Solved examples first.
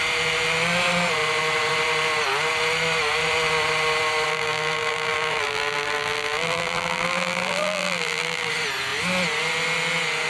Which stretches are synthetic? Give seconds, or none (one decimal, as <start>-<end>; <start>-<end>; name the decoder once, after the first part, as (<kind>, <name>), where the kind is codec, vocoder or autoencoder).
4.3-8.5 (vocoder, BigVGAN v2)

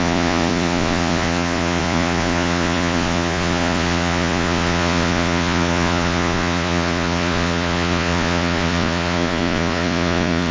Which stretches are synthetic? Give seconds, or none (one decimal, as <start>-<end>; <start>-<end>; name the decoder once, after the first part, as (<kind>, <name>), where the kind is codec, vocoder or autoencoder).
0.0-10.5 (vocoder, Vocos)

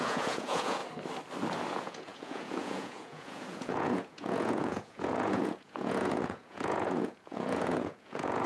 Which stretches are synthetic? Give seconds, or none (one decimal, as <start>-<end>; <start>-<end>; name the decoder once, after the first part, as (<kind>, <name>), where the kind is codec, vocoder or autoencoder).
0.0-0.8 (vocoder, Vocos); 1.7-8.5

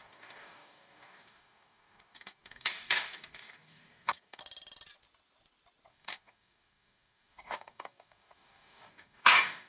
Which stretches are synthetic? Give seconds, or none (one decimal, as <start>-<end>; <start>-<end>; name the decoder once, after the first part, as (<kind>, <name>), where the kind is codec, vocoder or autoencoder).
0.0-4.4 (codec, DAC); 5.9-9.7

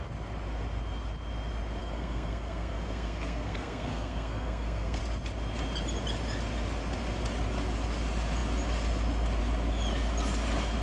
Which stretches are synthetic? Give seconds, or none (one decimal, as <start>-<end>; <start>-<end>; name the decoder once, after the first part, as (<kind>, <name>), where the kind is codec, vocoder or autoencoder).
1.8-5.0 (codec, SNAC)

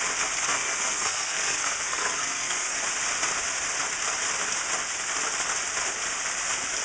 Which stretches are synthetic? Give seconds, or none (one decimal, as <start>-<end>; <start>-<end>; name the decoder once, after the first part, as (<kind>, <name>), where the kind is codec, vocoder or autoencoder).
0.5-2.8 (codec, SNAC)

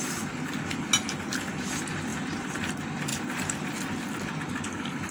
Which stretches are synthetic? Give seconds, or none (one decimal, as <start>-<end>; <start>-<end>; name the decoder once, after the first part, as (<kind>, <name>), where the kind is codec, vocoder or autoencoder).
2.1-2.7 (vocoder, BigVGAN v2); 3.1-3.7